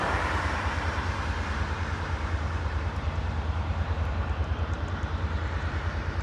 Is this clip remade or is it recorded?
remade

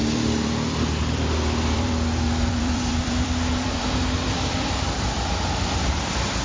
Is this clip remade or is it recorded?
remade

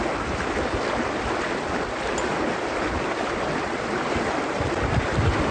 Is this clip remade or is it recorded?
recorded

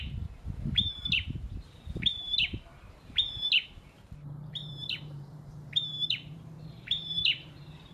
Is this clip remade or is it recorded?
remade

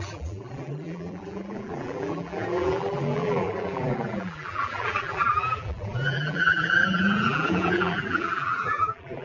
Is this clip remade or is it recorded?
remade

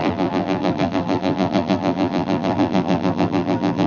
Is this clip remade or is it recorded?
remade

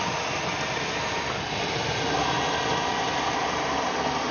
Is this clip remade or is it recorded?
recorded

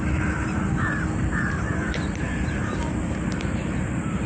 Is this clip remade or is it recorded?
remade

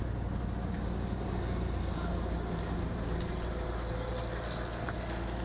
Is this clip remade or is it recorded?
recorded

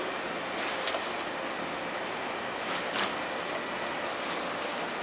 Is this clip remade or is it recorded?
recorded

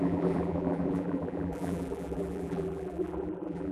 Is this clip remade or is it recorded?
remade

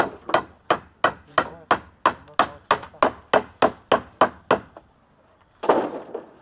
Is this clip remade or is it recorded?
recorded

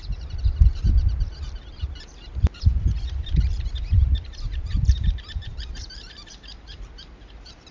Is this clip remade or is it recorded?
remade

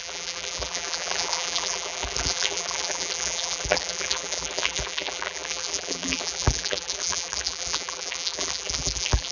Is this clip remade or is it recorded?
remade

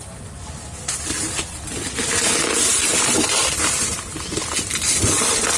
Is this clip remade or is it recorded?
remade